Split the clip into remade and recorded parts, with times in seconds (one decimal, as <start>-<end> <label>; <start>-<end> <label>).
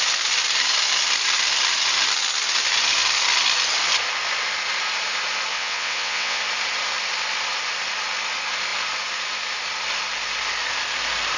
0.0-5.5 recorded; 5.5-6.4 remade; 6.4-11.4 recorded